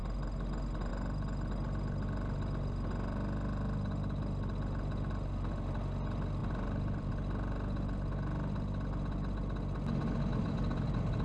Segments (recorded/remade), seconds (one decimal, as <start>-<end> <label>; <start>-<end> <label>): 0.0-6.4 recorded; 6.4-7.1 remade; 7.1-11.2 recorded